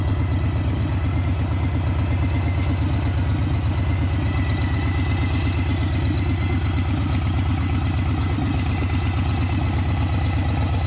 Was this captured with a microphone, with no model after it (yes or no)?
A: yes